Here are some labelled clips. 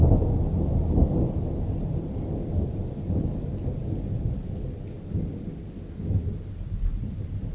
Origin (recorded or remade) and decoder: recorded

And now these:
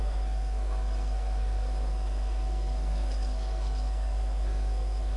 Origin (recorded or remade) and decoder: remade, codec, SNAC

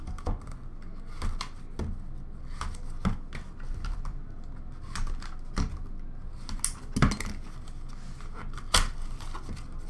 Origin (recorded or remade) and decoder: recorded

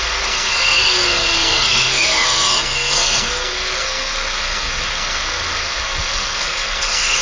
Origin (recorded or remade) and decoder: remade, codec, SNAC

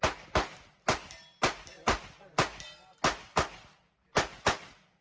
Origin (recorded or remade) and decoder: recorded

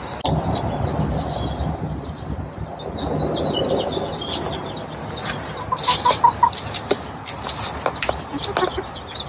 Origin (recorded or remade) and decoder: recorded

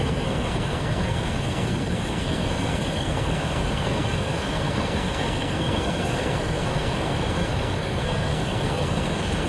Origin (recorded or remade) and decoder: remade, codec, SNAC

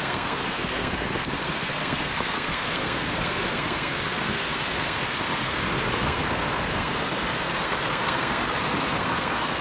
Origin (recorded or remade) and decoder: remade, codec, SNAC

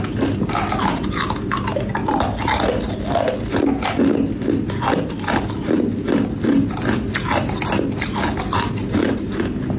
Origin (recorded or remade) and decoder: recorded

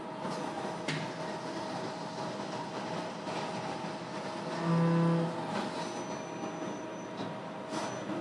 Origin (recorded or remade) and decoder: recorded